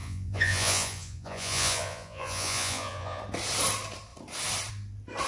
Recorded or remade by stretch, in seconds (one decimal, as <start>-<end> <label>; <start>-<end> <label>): 0.0-3.2 remade; 3.2-5.3 recorded